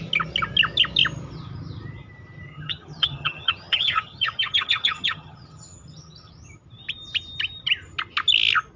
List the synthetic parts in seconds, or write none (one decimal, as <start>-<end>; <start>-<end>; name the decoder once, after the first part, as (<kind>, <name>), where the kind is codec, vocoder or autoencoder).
2.5-6.3 (vocoder, HiFi-GAN)